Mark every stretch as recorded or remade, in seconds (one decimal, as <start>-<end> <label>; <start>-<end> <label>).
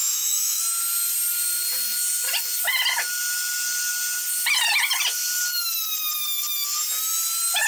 0.0-0.6 remade; 0.6-7.7 recorded